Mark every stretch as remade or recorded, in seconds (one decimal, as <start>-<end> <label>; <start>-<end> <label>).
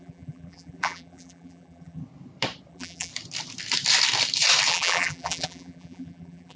0.0-2.0 remade; 2.0-2.7 recorded; 2.7-3.1 remade; 3.1-4.7 recorded; 4.7-6.6 remade